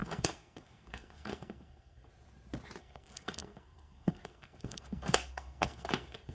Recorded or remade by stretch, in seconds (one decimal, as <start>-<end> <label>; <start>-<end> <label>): 0.0-2.1 remade; 2.1-2.8 recorded; 2.8-6.3 remade